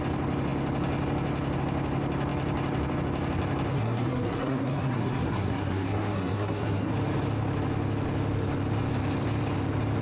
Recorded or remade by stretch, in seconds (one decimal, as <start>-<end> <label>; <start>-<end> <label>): 0.0-3.7 recorded; 3.7-6.9 remade; 6.9-10.0 recorded